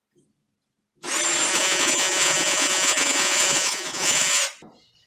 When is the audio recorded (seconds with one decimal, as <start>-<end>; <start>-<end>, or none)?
0.0-1.5; 4.4-5.1